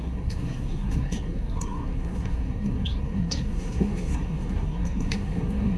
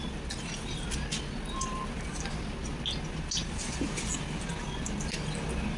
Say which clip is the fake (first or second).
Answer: first